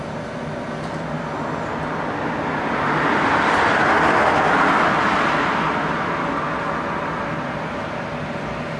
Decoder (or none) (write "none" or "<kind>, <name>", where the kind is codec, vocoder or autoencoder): none